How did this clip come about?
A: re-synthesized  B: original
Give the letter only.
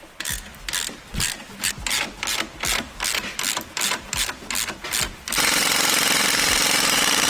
B